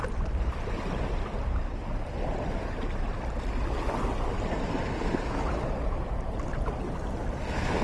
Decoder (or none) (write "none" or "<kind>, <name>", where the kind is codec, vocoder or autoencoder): none